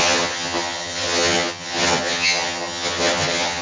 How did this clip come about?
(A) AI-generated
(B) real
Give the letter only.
A